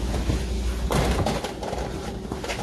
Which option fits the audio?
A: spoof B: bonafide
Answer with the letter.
B